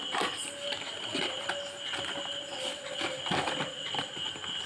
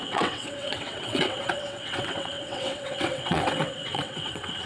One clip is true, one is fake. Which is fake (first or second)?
second